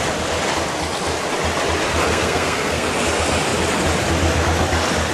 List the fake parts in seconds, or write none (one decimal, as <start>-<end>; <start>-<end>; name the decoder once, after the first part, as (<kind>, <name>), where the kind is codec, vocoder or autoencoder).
2.1-2.9 (codec, SNAC)